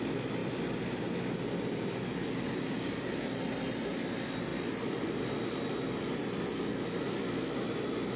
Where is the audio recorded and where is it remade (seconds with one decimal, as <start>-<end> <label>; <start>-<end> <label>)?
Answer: 0.0-2.1 recorded; 2.1-3.1 remade; 3.1-8.2 recorded